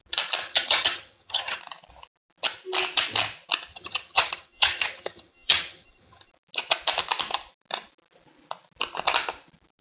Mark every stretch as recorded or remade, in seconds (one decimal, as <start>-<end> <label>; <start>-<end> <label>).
0.0-0.4 recorded; 0.4-1.6 remade; 1.6-3.7 recorded; 3.7-6.3 remade; 6.3-9.8 recorded